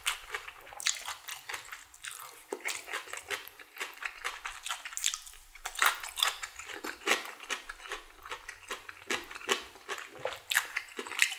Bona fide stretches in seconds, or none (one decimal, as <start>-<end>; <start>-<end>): 0.0-11.4

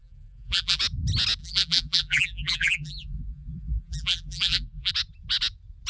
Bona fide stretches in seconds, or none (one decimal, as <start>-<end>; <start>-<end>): 0.8-1.4; 4.9-5.9